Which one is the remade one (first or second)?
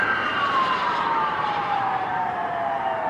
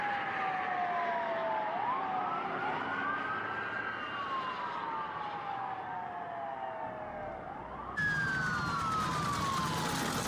first